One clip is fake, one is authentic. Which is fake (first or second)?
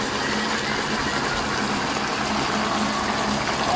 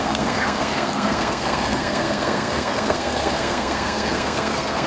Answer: second